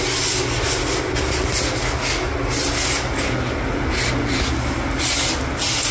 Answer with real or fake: real